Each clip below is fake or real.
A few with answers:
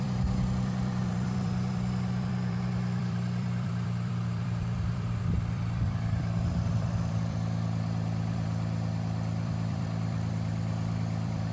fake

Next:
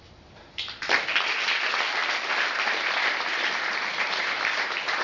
real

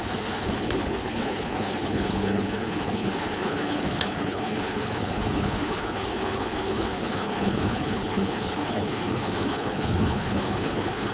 fake